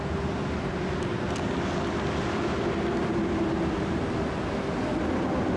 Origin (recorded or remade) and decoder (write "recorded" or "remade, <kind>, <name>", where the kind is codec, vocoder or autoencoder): recorded